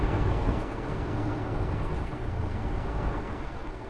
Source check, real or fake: fake